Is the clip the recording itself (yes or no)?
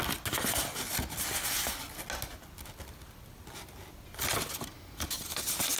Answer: yes